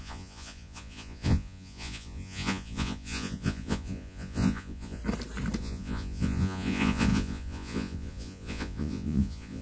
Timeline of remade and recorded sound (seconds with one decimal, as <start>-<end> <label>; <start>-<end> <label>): 0.0-5.0 remade; 5.0-5.6 recorded; 5.6-9.6 remade